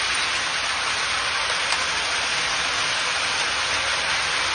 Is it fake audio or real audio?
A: real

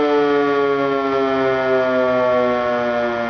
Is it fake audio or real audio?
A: real